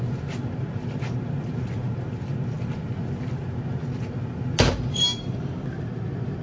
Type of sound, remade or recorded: recorded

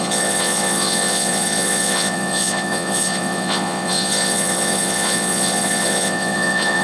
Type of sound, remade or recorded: remade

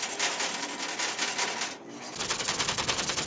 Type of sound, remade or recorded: recorded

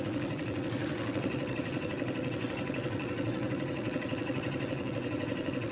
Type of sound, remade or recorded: remade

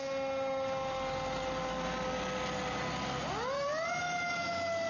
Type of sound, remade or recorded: recorded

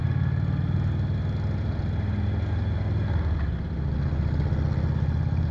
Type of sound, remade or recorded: recorded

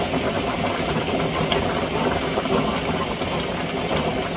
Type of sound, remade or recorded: recorded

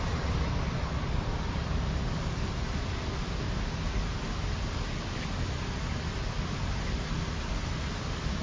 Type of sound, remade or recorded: recorded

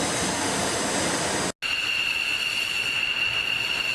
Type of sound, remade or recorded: recorded